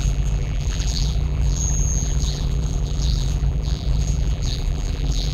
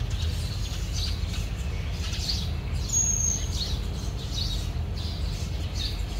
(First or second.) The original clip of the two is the second